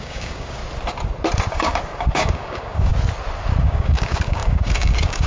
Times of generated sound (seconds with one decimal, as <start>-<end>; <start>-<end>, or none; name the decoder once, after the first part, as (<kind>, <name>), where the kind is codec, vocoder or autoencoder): 0.0-0.6 (codec, DAC); 1.5-2.9; 3.6-5.3